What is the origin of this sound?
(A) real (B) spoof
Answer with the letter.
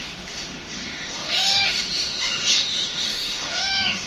B